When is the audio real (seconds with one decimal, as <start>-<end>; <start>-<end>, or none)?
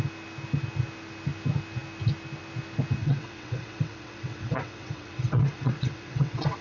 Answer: 0.0-3.0